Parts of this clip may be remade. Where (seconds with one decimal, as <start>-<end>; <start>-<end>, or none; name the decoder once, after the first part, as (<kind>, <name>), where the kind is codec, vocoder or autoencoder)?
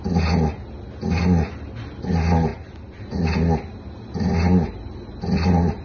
none